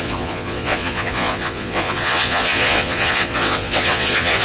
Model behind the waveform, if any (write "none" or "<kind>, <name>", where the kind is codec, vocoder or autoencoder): vocoder, Vocos